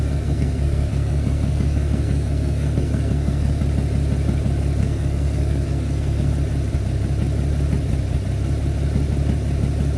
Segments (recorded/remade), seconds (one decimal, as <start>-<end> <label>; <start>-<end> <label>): 0.0-3.6 remade; 3.6-4.8 recorded; 4.8-6.3 remade; 6.3-10.0 recorded

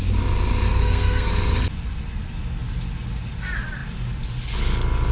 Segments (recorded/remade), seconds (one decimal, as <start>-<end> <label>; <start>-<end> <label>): 0.0-0.7 recorded; 0.7-1.3 remade; 1.3-5.1 recorded

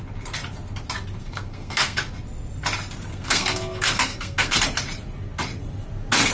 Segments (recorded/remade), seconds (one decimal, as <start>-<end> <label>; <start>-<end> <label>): 0.0-1.2 recorded; 1.2-2.0 remade; 2.0-3.1 recorded; 3.1-4.6 remade; 4.6-6.3 recorded

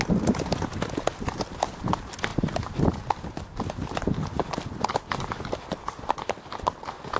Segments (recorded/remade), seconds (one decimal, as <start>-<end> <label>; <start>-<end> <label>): 0.0-7.2 recorded

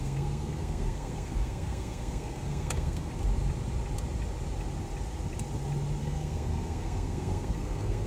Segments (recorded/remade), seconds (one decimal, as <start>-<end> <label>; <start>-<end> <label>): 0.0-3.1 remade; 3.1-6.0 recorded; 6.0-8.1 remade

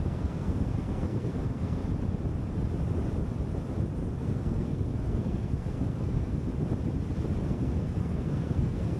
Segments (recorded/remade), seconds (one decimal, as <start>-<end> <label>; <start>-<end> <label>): 0.0-1.8 remade; 1.8-4.2 recorded; 4.2-6.5 remade; 6.5-7.4 recorded; 7.4-9.0 remade

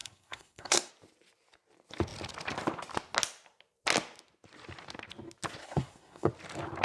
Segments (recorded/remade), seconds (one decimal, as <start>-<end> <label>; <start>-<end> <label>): 0.0-0.9 remade; 0.9-5.6 recorded; 5.6-6.3 remade; 6.3-6.8 recorded